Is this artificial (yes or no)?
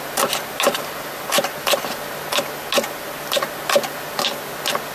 no